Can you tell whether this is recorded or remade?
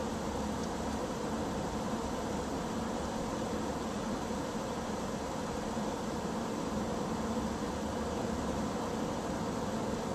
recorded